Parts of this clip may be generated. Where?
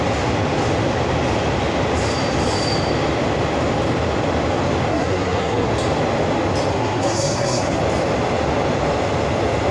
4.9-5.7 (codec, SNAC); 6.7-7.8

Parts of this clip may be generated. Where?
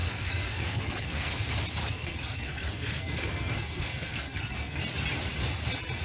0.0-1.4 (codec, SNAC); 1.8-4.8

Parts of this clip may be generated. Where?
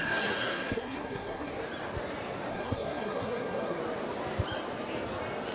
0.0-1.5 (codec, SNAC); 2.5-3.8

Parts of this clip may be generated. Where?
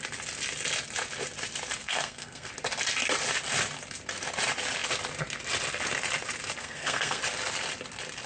1.8-2.5 (codec, SNAC); 6.6-7.2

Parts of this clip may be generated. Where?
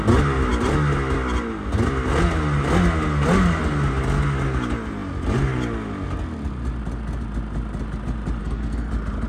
8.4-8.9 (codec, SNAC)